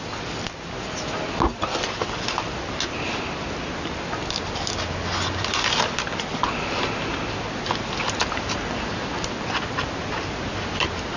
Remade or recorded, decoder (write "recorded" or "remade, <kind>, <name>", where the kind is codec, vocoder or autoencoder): recorded